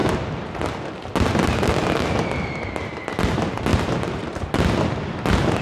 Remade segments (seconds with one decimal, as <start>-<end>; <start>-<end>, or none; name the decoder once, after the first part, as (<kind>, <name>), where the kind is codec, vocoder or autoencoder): 3.7-4.8 (vocoder, BigVGAN v2)